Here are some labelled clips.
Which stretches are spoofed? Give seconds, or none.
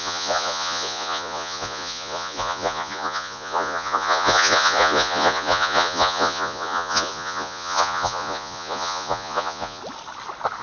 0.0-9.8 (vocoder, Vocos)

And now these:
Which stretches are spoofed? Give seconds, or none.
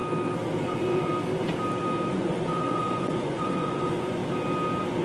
0.6-1.1 (vocoder, Vocos); 2.1-4.2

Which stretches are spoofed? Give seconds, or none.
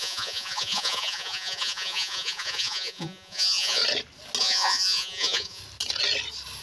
0.0-3.8 (vocoder, Vocos); 4.4-5.6